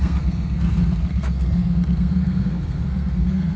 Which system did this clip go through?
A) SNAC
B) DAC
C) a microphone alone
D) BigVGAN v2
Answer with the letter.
A